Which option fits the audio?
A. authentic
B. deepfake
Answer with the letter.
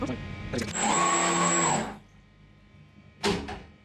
A